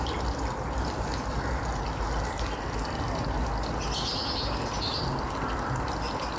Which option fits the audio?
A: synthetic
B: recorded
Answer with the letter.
B